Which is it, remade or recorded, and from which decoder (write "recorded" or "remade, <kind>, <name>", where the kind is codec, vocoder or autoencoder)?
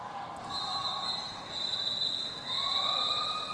recorded